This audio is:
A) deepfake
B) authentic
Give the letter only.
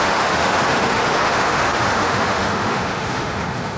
A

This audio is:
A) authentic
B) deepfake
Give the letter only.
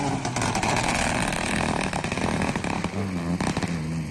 A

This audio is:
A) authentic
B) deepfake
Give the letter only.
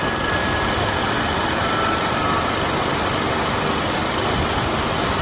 A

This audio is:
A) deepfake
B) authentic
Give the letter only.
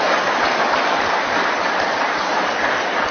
A